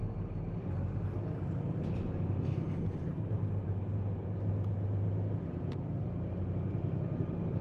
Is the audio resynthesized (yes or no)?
no